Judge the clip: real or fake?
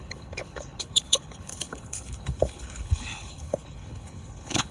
fake